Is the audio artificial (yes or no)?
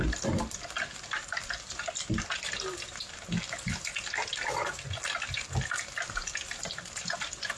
no